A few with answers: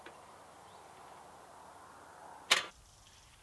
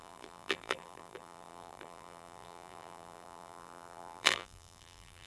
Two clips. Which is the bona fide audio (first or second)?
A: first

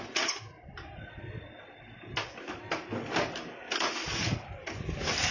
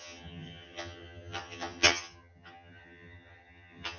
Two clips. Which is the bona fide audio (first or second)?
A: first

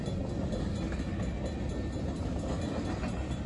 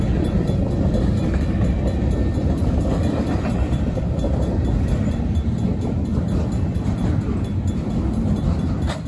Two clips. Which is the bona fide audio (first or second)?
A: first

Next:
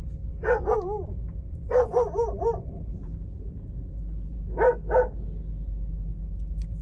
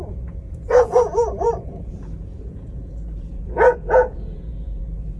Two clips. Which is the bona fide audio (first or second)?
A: first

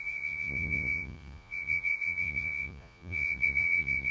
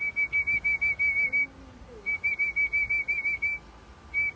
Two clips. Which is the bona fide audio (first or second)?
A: second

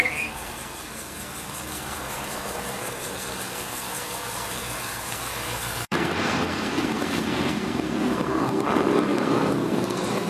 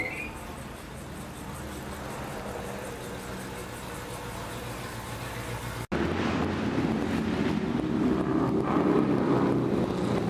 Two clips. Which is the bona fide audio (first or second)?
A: second